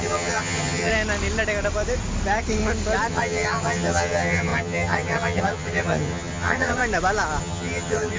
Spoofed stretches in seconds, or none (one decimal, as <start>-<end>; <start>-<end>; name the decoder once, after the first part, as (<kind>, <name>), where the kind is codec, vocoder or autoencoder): 0.0-0.9 (vocoder, HiFi-GAN); 3.1-6.8; 7.4-8.2